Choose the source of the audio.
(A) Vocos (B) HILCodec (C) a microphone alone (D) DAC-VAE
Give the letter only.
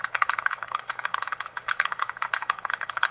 B